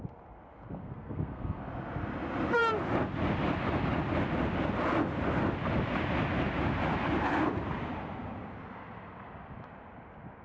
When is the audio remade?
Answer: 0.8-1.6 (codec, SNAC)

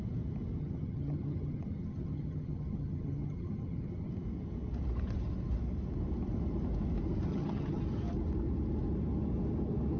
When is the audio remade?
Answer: 0.6-4.1 (vocoder, HiFi-GAN); 7.3-7.8

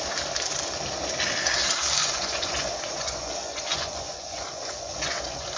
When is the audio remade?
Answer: 2.0-5.6 (vocoder, Vocos)

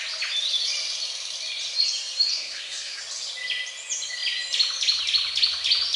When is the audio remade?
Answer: 2.3-3.0 (codec, SNAC)

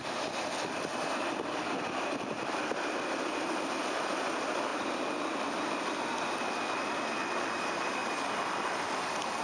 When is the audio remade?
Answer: none

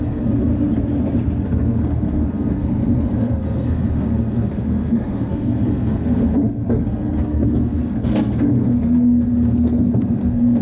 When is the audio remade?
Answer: 0.0-0.5 (codec, SNAC); 1.4-10.6

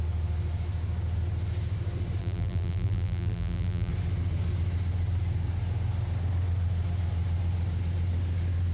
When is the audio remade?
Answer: 2.2-3.9 (vocoder, BigVGAN v2)

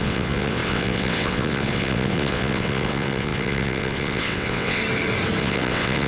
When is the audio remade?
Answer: 0.0-4.8 (vocoder, WaveNeXt); 5.4-6.1